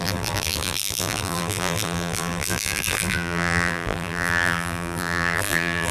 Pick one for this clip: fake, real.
fake